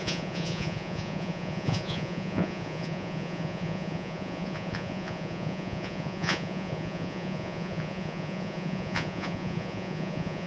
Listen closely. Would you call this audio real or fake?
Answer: fake